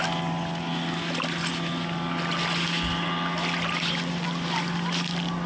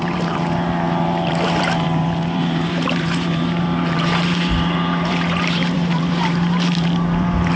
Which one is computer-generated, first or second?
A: second